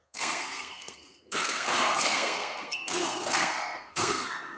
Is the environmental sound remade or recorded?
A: remade